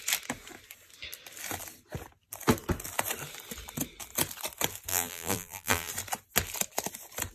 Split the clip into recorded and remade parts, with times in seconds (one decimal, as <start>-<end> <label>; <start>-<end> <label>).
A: 0.0-4.9 recorded; 4.9-5.9 remade; 5.9-7.3 recorded